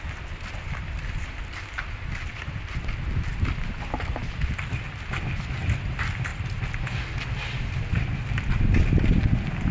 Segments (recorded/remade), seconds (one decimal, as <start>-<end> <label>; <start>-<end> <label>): 0.0-9.7 recorded